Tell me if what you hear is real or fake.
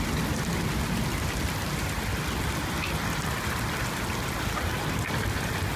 real